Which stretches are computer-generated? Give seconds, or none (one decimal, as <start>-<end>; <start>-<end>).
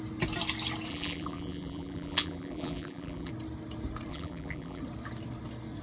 0.9-3.3; 4.1-4.8